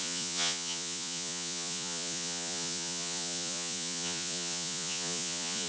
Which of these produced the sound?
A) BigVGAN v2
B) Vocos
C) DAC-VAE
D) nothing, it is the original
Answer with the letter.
B